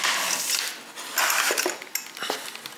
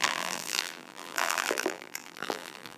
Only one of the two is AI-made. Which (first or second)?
second